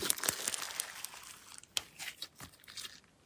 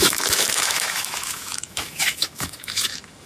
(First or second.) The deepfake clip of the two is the second